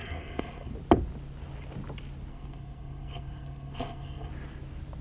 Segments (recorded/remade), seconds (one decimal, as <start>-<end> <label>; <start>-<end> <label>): 0.0-0.7 remade; 0.7-2.3 recorded; 2.3-4.3 remade; 4.3-5.0 recorded